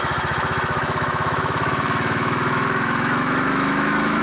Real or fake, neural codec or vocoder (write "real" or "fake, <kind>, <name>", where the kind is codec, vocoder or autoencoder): fake, autoencoder, DAC-VAE